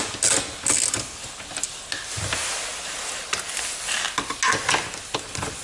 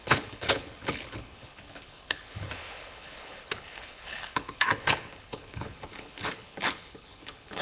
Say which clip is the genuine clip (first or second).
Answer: first